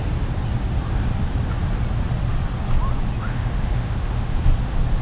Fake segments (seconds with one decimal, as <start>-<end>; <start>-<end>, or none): 3.2-4.5